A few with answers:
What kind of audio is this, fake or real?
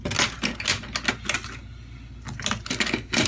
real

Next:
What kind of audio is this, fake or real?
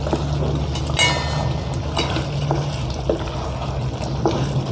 real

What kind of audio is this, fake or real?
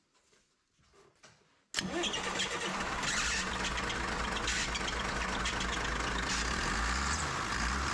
real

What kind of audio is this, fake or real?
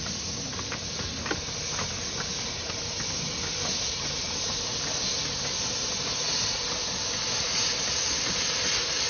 real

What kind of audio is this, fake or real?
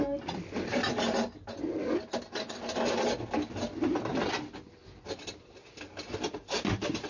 real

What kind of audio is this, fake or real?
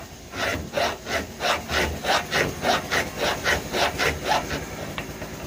real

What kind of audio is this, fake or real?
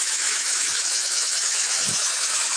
fake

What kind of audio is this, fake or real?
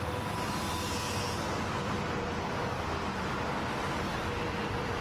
real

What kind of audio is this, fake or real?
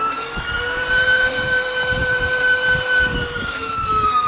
fake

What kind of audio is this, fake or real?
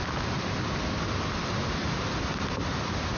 real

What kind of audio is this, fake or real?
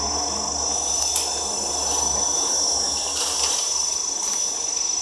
real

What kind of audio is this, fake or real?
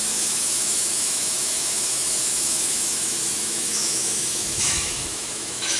fake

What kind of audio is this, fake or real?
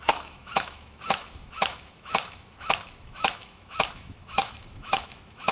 fake